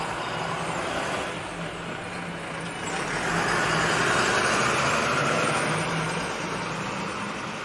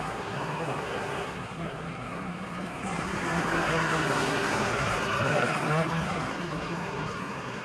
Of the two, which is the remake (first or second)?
second